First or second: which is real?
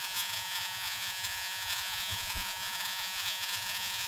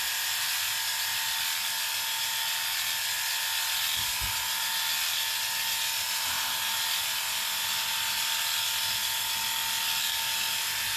second